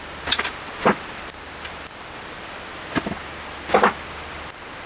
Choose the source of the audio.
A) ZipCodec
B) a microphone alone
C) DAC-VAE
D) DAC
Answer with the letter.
B